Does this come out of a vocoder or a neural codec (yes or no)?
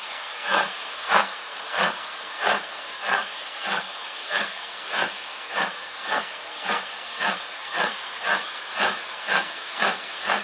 yes